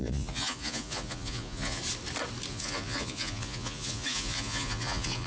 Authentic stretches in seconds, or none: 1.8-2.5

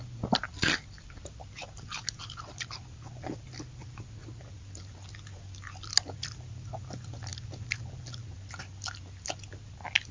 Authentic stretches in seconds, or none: 0.0-10.1

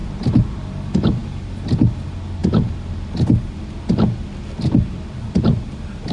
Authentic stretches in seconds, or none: 0.0-6.1

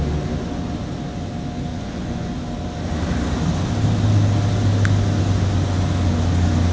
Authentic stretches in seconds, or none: 0.0-1.7; 2.3-6.7

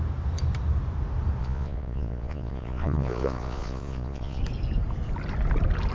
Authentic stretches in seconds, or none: 0.0-1.4; 4.4-5.9

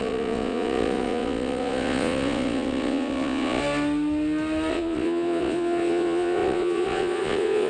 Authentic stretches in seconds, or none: 3.6-4.7

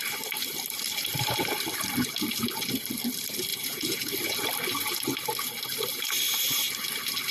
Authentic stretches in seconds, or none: 0.0-3.5; 4.1-7.3

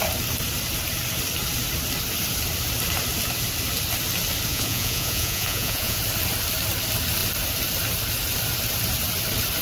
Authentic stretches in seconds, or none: 0.0-4.5; 6.0-9.6